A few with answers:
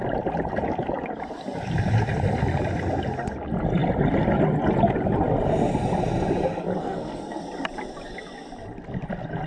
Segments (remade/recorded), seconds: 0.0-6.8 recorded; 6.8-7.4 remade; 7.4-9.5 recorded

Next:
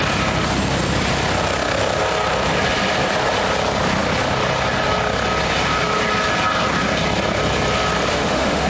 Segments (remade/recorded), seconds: 0.0-8.1 recorded; 8.1-8.7 remade

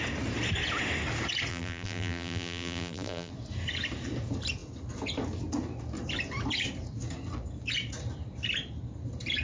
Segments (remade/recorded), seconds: 0.0-1.5 recorded; 1.5-3.3 remade; 3.3-9.4 recorded

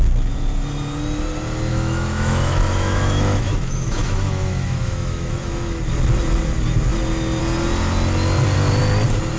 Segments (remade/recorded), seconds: 0.0-1.7 recorded; 1.7-5.8 remade; 5.8-9.4 recorded

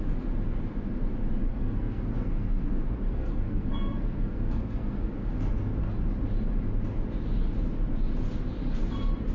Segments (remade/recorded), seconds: 0.0-1.5 recorded; 1.5-5.5 remade; 5.5-9.3 recorded

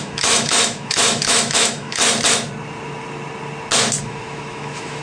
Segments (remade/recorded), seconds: 0.0-2.0 remade; 2.0-4.0 recorded; 4.0-5.0 remade